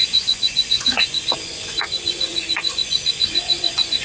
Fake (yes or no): yes